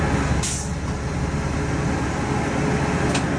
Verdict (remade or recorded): recorded